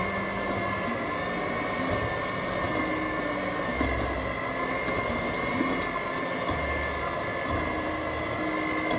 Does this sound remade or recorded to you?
recorded